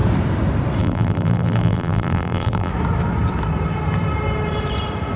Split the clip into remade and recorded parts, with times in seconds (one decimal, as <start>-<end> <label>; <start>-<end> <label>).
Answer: 0.0-0.8 recorded; 0.8-2.7 remade; 2.7-5.2 recorded